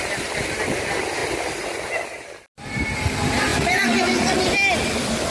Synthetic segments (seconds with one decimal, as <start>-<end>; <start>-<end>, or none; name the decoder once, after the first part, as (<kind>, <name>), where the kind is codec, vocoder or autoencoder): 3.5-4.4 (vocoder, Vocos)